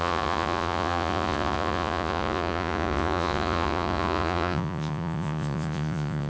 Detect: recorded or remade remade